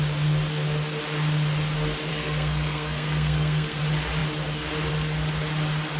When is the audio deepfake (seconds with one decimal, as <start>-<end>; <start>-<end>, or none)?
2.1-3.8

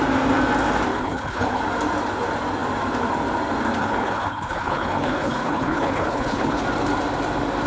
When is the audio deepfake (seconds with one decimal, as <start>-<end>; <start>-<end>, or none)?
0.9-1.6; 3.8-6.6

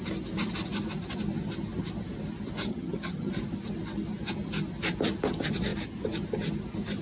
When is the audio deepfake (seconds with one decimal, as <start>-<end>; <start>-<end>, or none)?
2.7-3.3

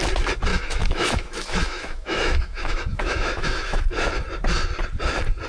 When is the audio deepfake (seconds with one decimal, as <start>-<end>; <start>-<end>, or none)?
0.5-3.8

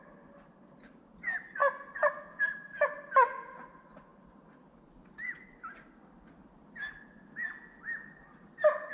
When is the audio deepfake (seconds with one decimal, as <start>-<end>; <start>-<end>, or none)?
none

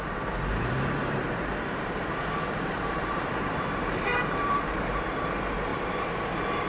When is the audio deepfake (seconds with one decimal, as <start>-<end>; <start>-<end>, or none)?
1.0-5.0; 5.7-6.2